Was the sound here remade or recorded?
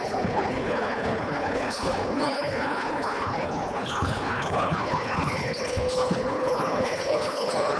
remade